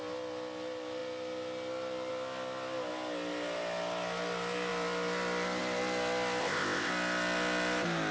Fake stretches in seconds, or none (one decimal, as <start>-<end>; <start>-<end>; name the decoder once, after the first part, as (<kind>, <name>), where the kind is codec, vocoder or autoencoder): 6.4-6.9 (codec, ZipCodec)